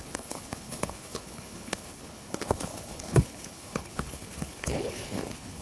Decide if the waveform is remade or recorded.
remade